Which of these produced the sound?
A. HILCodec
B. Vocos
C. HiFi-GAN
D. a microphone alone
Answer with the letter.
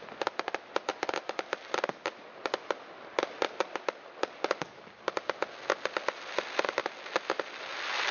D